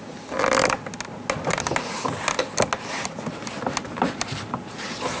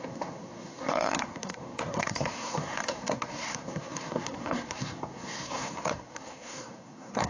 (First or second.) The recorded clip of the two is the first